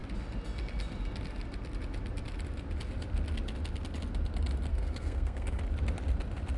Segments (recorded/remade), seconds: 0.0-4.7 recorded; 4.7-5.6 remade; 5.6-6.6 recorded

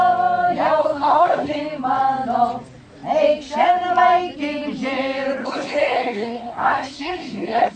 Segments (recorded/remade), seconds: 0.0-0.8 recorded; 0.8-1.6 remade; 1.6-5.4 recorded; 5.4-7.8 remade

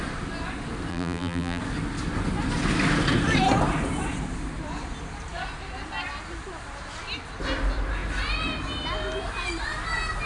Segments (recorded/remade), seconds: 0.0-0.9 recorded; 0.9-1.6 remade; 1.6-10.3 recorded

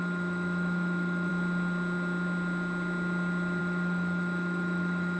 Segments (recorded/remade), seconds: 0.0-1.3 remade; 1.3-3.6 recorded; 3.6-5.2 remade

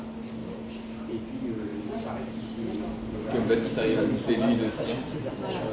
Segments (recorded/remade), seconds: 0.0-5.7 recorded

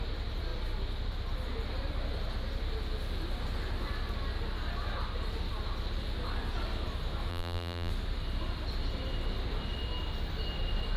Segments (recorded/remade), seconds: 0.0-7.3 recorded; 7.3-7.9 remade; 7.9-11.0 recorded

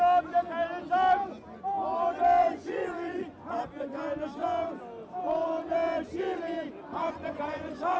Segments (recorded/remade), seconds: 0.0-2.4 recorded; 2.4-3.6 remade; 3.6-6.9 recorded; 6.9-8.0 remade